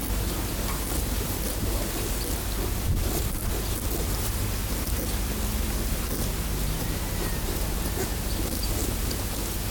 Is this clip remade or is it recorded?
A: recorded